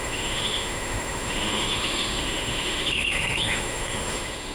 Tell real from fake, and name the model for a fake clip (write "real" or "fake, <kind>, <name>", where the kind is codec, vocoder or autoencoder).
fake, autoencoder, DAC-VAE